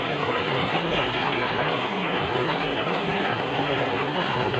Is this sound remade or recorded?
remade